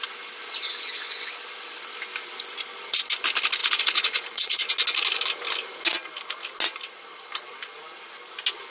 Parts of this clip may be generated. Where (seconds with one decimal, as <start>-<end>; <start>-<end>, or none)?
3.6-4.7